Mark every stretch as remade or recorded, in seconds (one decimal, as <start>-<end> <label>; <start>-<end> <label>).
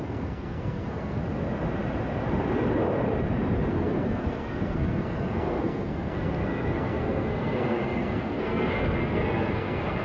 0.0-1.2 remade; 1.2-3.7 recorded; 3.7-10.0 remade